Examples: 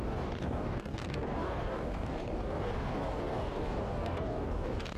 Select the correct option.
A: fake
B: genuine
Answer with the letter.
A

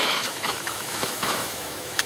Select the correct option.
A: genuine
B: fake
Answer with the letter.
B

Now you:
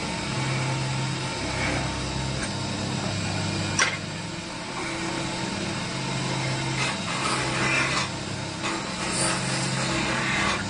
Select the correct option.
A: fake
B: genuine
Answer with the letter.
B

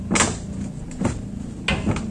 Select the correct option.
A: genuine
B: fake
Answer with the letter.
A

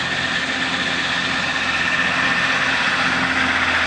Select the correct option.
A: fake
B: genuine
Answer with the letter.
B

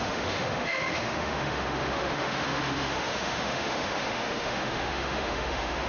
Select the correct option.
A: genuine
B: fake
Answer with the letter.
B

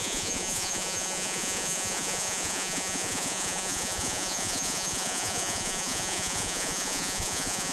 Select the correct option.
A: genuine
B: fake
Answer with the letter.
B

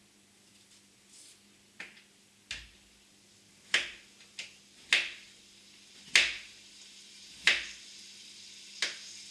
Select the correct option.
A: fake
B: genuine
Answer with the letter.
B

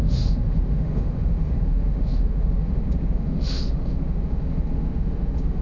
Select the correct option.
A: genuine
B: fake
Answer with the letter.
B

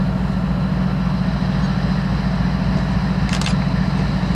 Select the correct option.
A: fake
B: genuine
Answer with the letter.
B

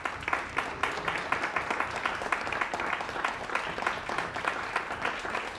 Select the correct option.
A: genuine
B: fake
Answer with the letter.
A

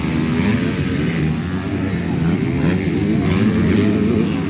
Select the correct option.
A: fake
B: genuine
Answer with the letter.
B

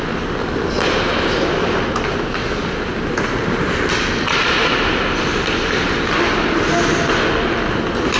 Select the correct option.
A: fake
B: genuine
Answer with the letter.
B